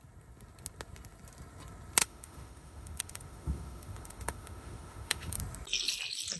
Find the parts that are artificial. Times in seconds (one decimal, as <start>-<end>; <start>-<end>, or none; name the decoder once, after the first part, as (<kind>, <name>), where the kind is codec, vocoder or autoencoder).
2.0-5.4 (autoencoder, DAC-VAE)